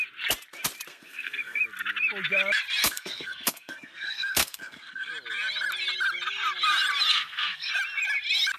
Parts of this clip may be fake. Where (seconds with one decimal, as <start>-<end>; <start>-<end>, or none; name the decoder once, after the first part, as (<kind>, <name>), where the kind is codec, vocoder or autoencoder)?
0.9-1.6 (codec, SNAC); 2.8-5.1; 7.1-7.7

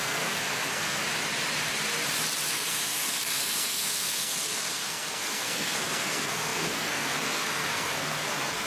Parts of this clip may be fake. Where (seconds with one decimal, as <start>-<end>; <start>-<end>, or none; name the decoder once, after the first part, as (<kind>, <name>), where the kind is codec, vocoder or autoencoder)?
0.0-1.0 (codec, SNAC); 2.5-8.7

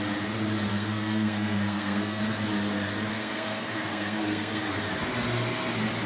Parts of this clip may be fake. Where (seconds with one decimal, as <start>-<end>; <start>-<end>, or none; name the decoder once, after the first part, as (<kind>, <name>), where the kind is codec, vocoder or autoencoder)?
0.7-2.2 (codec, SNAC); 3.1-4.8